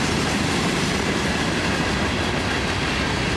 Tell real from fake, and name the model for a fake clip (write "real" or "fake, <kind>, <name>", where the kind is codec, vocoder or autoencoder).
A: real